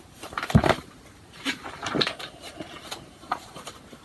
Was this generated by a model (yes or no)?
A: yes